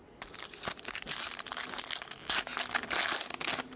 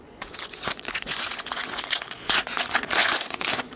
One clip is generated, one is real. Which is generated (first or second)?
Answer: second